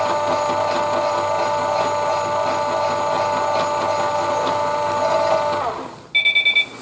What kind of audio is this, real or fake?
real